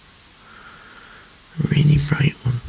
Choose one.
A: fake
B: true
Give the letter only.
B